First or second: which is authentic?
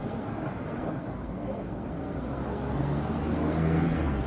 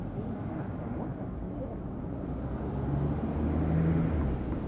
second